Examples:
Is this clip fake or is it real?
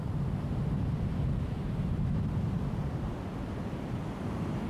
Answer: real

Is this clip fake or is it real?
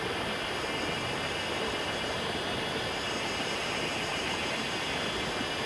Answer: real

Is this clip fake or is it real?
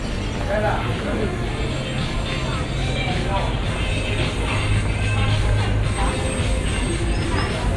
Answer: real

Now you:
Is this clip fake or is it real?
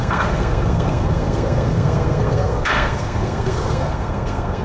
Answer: fake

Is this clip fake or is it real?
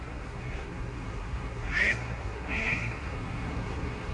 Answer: fake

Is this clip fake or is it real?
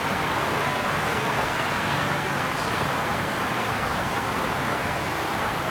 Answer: fake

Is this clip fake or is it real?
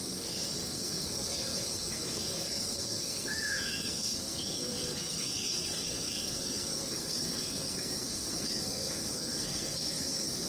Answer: fake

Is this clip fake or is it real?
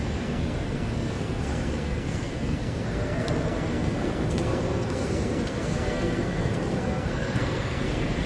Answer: fake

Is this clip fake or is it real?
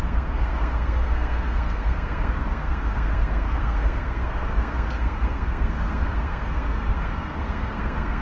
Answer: fake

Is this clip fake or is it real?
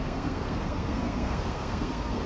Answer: fake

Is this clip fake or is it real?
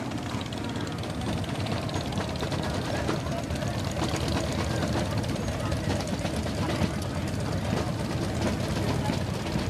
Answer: real